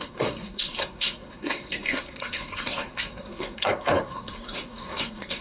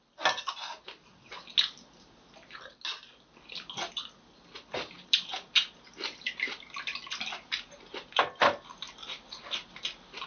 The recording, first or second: second